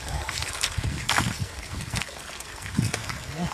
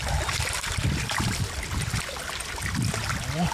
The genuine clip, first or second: second